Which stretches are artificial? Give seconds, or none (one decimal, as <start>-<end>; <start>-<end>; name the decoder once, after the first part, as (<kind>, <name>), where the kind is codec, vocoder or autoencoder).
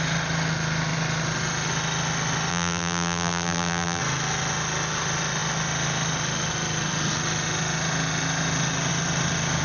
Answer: 2.5-4.0 (vocoder, BigVGAN v2)